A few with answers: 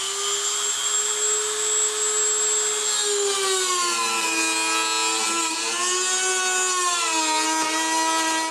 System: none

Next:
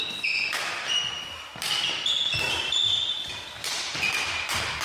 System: none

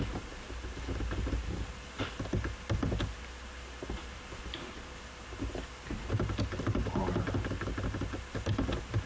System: none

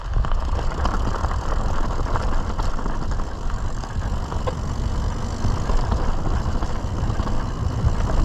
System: none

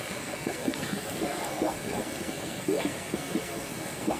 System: codec, SNAC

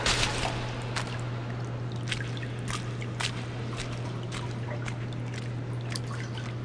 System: none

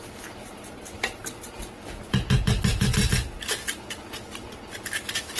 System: none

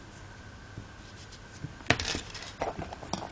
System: none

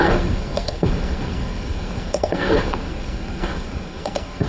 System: codec, SNAC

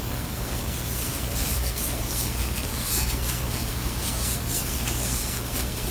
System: codec, SNAC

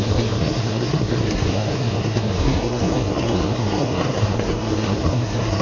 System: codec, SNAC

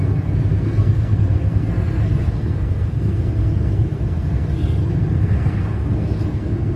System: codec, SNAC